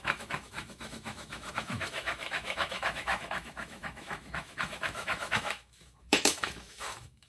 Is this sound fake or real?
fake